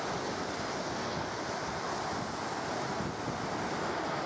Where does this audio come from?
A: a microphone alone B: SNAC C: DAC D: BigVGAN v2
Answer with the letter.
A